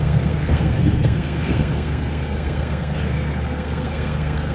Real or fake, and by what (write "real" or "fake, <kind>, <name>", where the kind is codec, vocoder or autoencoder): fake, codec, SNAC